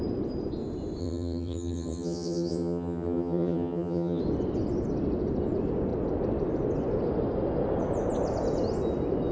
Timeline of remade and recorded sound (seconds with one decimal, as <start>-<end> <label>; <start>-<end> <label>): 0.0-1.0 recorded; 1.0-4.2 remade; 4.2-9.3 recorded